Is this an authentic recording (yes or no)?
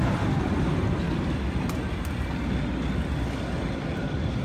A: yes